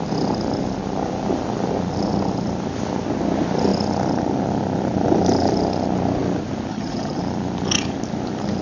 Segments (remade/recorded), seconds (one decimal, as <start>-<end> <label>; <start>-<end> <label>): 0.0-6.7 recorded; 6.7-7.2 remade; 7.2-8.6 recorded